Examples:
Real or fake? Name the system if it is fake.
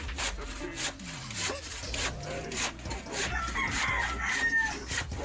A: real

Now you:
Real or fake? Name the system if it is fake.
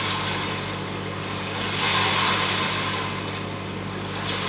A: real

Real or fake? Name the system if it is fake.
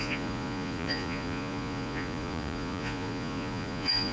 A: fake, vocoder, Vocos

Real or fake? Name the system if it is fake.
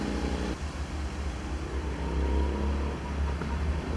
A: real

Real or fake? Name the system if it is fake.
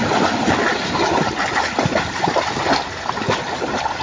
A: real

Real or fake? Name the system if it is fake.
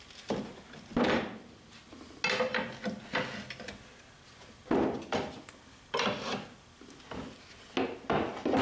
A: real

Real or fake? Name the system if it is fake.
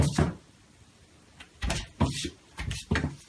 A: fake, vocoder, BigVGAN v2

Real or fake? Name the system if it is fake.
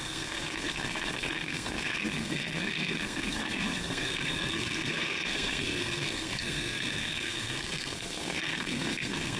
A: fake, codec, SNAC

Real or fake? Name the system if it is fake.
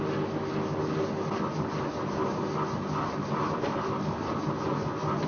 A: real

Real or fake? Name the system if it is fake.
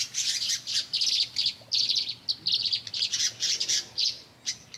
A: real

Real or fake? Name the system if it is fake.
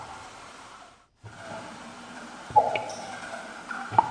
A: fake, vocoder, BigVGAN v2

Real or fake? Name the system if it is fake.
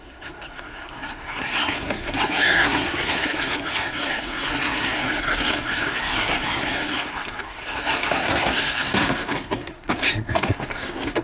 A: fake, codec, SNAC